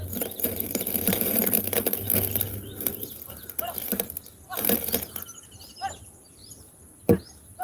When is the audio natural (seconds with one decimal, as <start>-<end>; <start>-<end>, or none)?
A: 0.0-6.4